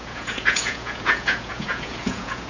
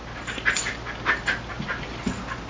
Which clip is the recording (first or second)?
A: second